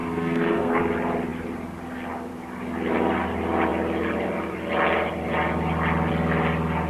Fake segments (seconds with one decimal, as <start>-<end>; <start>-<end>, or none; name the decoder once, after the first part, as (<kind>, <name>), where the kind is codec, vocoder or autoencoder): 0.0-0.8 (codec, SNAC)